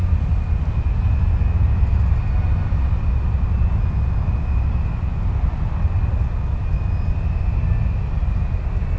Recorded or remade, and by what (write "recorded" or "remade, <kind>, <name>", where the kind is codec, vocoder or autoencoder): recorded